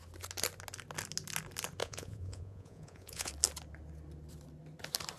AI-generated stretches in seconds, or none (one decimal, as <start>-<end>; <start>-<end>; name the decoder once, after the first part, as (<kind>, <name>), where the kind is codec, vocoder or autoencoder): 1.8-3.3 (vocoder, Vocos)